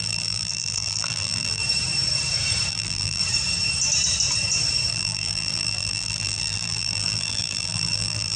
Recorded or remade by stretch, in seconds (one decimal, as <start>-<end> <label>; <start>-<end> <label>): 0.0-1.6 remade; 1.6-2.7 recorded; 2.7-3.2 remade; 3.2-4.9 recorded; 4.9-8.4 remade

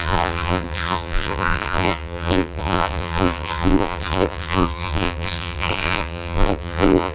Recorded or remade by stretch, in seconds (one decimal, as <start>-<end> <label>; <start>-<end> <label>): 0.0-7.1 remade

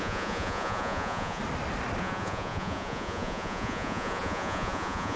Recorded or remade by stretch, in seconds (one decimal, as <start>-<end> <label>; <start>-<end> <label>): 0.0-1.4 remade; 1.4-2.0 recorded; 2.0-5.2 remade

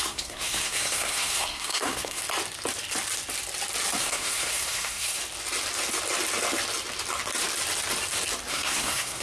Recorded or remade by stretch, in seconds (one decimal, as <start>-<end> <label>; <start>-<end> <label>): 0.0-2.2 remade; 2.2-4.0 recorded; 4.0-5.2 remade; 5.2-8.5 recorded; 8.5-9.2 remade

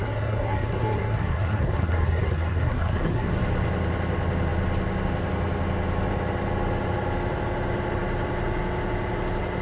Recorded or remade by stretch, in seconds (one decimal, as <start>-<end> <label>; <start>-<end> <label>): 0.0-3.3 remade; 3.3-9.6 recorded